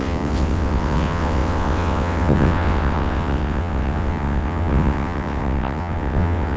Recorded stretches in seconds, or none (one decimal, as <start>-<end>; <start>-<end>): none